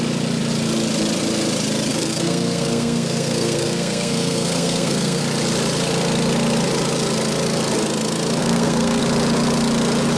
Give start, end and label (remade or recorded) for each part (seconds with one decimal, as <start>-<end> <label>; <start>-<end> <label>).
0.0-1.9 recorded; 1.9-5.2 remade; 5.2-8.4 recorded; 8.4-9.0 remade; 9.0-10.2 recorded